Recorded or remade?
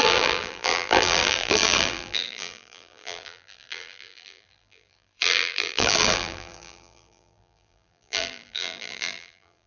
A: remade